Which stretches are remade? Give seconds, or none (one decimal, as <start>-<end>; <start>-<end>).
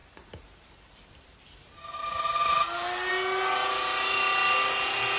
0.0-3.1